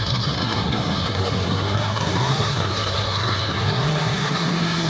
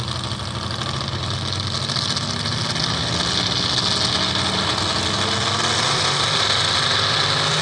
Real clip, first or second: second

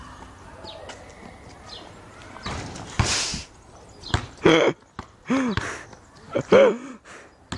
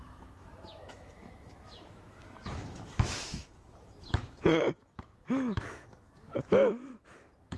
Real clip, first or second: first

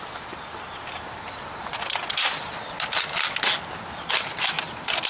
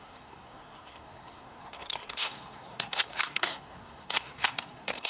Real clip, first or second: first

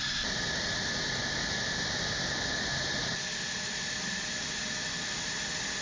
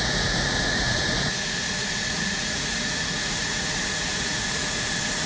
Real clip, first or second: first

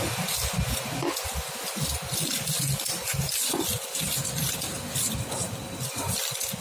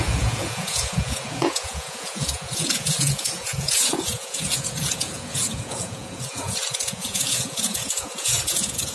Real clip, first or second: first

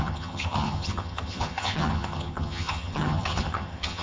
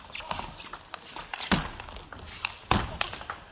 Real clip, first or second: second